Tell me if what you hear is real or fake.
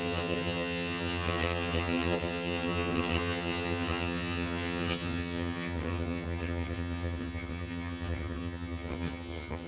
fake